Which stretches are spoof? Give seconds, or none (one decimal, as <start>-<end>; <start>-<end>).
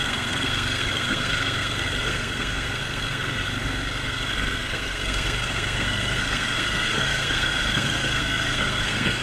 0.0-9.2